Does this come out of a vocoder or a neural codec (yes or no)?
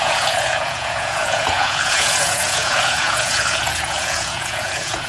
yes